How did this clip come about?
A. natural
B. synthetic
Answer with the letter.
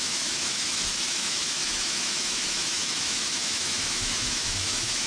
B